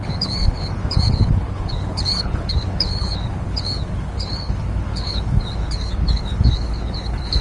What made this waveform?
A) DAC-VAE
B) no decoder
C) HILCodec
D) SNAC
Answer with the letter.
C